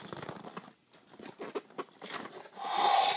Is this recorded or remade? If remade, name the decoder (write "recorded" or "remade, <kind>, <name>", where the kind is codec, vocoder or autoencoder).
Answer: recorded